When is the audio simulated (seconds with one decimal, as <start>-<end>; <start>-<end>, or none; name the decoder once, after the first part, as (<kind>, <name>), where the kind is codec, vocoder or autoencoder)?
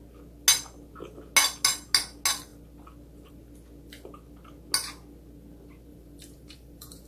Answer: 5.9-7.1 (vocoder, BigVGAN v2)